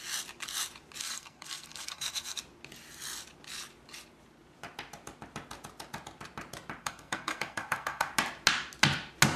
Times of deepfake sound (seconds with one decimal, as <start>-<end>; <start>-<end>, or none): 1.0-2.4; 6.8-8.1